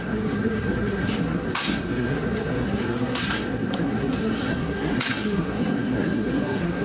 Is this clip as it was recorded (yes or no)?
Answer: no